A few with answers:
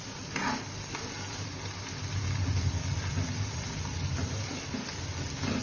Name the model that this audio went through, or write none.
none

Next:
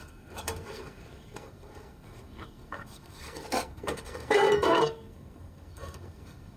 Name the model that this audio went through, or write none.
codec, SNAC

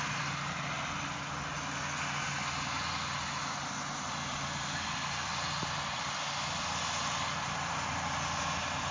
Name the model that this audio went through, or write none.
none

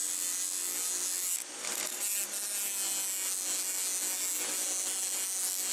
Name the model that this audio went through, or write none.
none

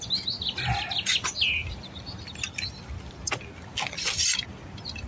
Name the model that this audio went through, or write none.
none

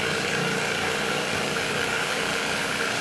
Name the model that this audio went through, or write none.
codec, DAC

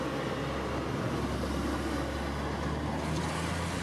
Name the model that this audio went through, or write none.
none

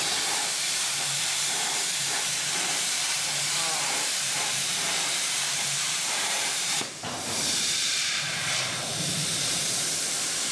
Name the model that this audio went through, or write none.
vocoder, BigVGAN v2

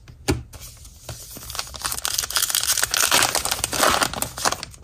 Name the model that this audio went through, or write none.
none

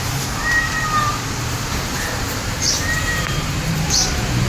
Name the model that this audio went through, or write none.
vocoder, BigVGAN v2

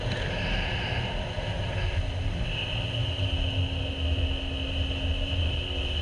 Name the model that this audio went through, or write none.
none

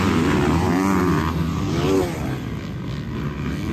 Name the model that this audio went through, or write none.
none